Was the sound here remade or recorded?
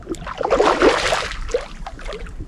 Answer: recorded